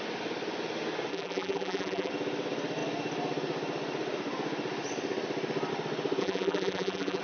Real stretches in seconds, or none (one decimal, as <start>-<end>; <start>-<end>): 0.0-1.1; 2.1-6.2